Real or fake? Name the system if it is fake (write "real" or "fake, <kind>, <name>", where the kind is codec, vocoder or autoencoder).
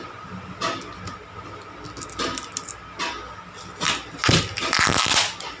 real